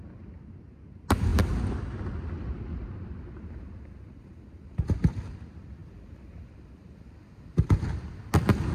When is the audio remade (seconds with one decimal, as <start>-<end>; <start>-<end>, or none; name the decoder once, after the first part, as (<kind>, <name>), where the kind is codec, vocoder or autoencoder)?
none